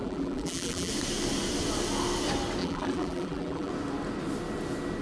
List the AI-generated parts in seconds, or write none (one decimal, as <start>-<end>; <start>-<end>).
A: 0.0-0.9; 2.6-3.7